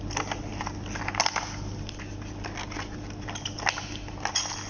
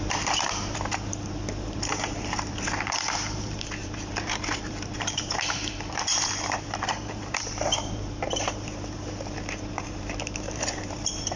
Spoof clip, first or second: second